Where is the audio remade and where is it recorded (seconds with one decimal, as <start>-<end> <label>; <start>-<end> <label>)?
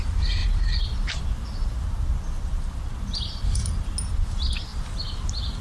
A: 0.0-0.4 recorded; 0.4-3.8 remade; 3.8-5.6 recorded